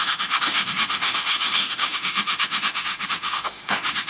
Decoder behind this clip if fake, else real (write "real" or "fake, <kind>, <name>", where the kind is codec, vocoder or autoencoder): fake, autoencoder, DAC-VAE